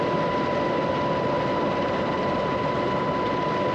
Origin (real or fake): real